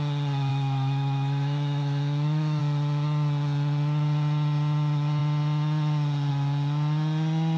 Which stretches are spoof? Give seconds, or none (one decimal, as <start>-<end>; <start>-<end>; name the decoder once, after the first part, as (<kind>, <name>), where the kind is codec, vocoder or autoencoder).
0.5-2.6 (autoencoder, DAC-VAE)